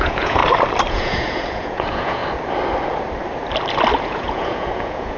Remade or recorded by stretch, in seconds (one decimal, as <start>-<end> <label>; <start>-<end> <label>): 0.0-0.4 remade; 0.4-0.9 recorded; 0.9-2.2 remade; 2.2-4.0 recorded; 4.0-5.2 remade